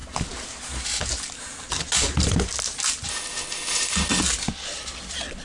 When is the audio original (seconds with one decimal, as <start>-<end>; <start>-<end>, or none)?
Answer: 0.0-3.1; 4.2-5.4